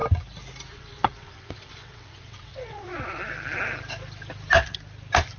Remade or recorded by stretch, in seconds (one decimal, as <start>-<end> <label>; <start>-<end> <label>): 0.0-0.7 recorded; 0.7-3.2 remade; 3.2-5.4 recorded